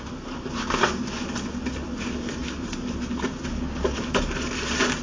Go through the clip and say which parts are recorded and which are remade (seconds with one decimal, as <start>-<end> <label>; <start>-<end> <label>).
0.0-5.0 recorded